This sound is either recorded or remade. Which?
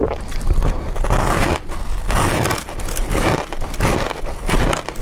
recorded